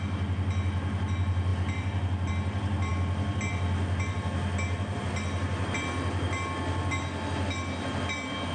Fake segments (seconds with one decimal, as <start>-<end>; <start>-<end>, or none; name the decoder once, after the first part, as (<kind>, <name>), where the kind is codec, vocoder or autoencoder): none